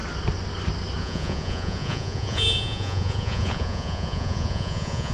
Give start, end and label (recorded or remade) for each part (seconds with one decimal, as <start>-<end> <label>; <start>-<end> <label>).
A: 0.0-1.0 recorded; 1.0-5.1 remade